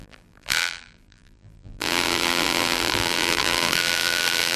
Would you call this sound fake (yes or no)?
yes